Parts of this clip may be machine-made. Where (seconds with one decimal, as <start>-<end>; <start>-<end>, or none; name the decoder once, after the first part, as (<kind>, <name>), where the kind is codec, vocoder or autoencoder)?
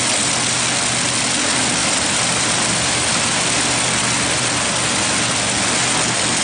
1.8-3.5 (vocoder, BigVGAN v2)